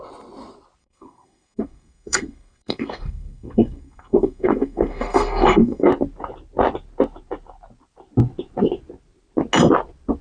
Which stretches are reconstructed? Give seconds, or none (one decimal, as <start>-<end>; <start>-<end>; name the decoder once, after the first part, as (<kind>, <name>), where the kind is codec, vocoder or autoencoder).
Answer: 0.8-5.9 (codec, SNAC)